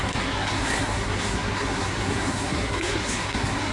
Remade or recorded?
remade